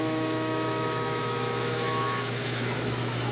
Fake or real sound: fake